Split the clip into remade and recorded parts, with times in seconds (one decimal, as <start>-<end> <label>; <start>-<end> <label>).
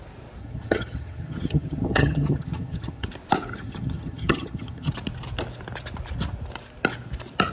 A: 0.0-0.4 recorded; 0.4-3.1 remade; 3.1-3.5 recorded; 3.5-4.9 remade; 4.9-7.5 recorded